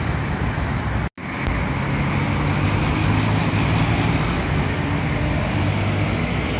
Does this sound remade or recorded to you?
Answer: recorded